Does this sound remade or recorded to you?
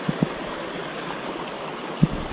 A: recorded